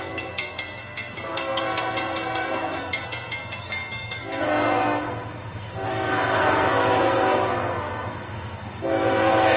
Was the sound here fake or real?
fake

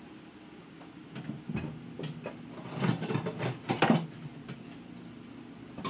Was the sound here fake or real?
real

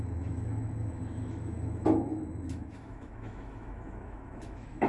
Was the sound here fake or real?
fake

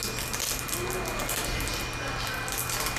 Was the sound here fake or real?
real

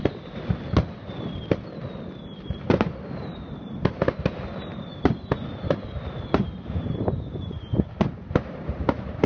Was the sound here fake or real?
fake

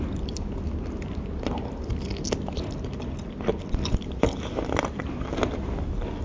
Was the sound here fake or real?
real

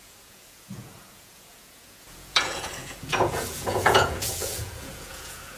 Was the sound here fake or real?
fake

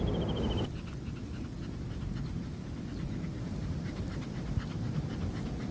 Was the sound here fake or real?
real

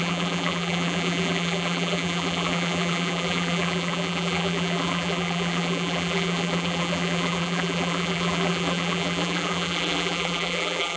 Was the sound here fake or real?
fake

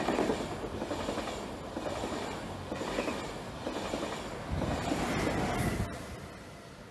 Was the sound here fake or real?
real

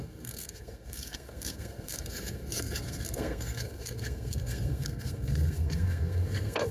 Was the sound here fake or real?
fake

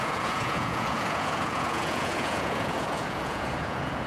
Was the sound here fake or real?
fake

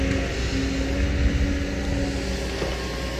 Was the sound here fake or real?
real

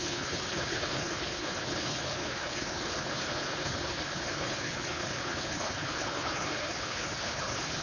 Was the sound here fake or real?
fake